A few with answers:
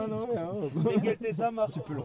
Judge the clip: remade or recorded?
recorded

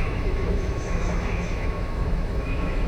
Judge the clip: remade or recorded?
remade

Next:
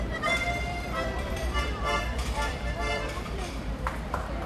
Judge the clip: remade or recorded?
remade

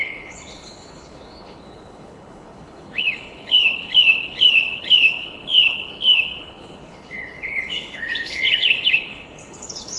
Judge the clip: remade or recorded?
remade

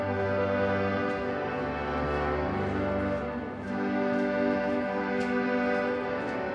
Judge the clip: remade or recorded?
recorded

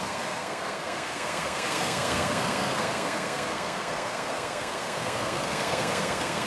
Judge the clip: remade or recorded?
remade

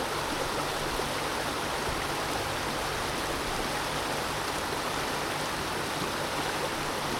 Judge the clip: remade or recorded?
recorded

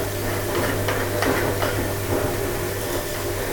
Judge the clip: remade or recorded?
recorded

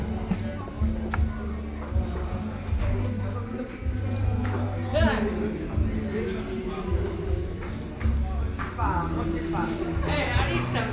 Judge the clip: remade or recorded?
recorded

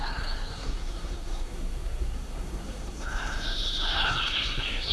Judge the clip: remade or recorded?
remade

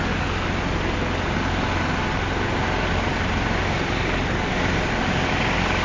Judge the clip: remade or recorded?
recorded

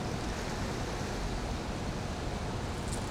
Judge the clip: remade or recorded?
recorded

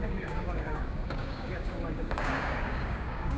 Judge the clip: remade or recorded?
remade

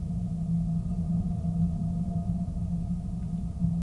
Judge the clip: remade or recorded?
recorded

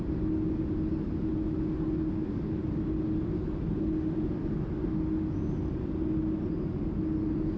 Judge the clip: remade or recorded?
recorded